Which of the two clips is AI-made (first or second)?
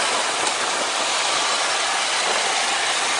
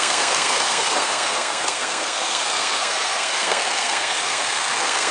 second